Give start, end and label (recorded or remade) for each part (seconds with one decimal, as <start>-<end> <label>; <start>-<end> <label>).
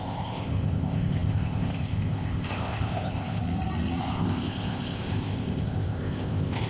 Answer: 0.0-3.4 remade; 3.4-4.0 recorded; 4.0-6.7 remade